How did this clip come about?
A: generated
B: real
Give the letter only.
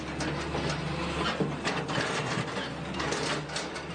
B